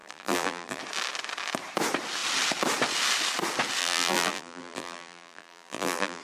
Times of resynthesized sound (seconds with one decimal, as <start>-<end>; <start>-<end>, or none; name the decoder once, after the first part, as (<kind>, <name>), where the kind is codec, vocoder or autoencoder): 0.0-0.8 (vocoder, BigVGAN v2); 3.8-6.2